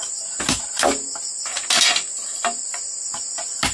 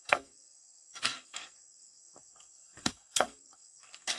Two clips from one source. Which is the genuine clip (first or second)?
first